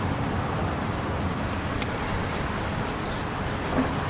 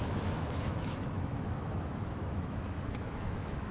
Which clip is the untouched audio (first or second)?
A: first